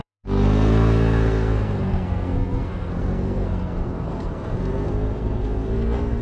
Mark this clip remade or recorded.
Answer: remade